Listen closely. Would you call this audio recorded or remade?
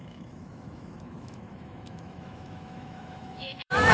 remade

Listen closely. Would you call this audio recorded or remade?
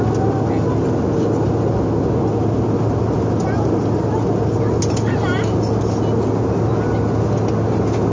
recorded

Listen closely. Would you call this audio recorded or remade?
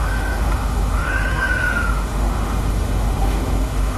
remade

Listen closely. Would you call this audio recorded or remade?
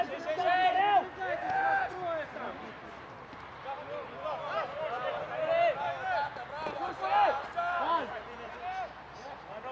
recorded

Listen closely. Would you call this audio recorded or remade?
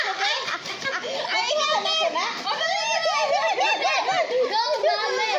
recorded